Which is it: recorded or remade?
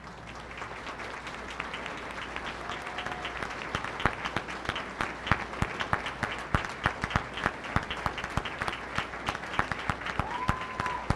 recorded